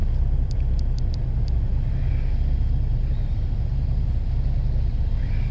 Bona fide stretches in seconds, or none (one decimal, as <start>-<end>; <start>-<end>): 1.7-5.0